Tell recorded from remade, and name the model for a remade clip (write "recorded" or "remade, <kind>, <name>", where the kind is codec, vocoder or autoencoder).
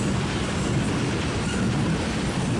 recorded